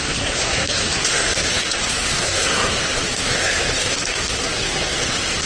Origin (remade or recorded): remade